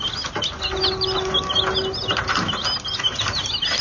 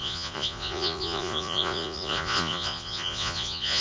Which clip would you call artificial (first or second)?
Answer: second